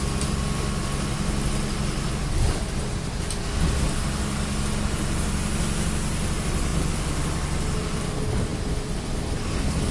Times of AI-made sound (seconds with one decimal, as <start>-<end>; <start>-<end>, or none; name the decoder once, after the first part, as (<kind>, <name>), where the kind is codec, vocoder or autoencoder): 6.7-8.0 (vocoder, BigVGAN v2)